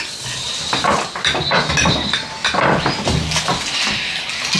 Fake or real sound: real